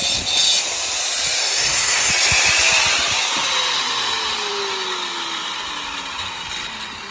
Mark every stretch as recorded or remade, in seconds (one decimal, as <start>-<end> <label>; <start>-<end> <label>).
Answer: 0.0-1.4 recorded; 1.4-2.1 remade; 2.1-7.1 recorded